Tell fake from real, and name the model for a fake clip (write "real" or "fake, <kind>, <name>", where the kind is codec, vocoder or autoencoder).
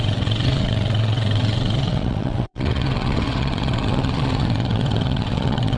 fake, vocoder, WaveNeXt